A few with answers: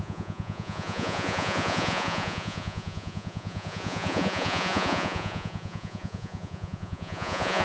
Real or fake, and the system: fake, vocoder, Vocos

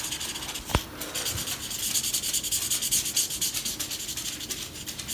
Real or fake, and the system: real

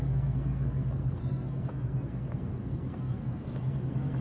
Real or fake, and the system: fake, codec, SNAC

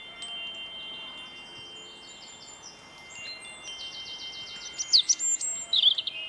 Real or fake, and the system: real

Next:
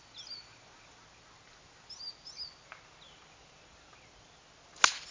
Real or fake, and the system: real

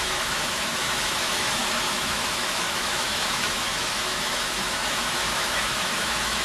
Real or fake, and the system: fake, autoencoder, DAC-VAE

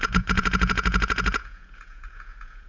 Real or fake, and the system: fake, vocoder, Vocos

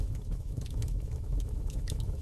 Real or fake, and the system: fake, autoencoder, DAC-VAE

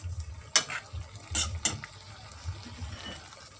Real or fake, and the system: real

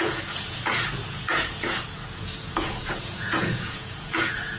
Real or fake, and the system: fake, vocoder, Vocos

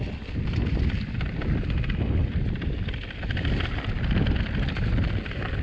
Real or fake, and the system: real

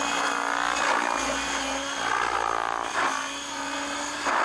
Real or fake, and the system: real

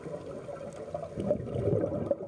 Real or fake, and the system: real